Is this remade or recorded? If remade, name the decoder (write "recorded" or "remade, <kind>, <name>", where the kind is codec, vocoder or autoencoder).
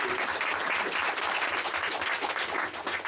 recorded